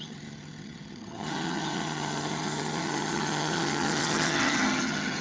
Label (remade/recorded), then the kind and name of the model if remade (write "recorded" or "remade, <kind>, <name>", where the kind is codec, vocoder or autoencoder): remade, vocoder, HiFi-GAN